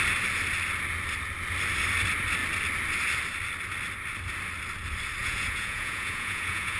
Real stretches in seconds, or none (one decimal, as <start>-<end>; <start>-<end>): 0.0-5.2